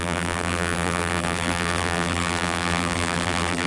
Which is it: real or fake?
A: fake